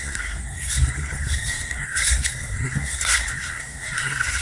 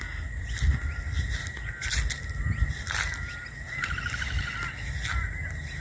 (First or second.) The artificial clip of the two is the first